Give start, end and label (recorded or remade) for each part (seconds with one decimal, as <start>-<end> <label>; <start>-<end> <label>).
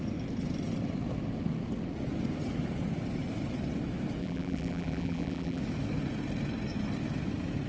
0.0-4.2 recorded; 4.2-5.6 remade; 5.6-7.7 recorded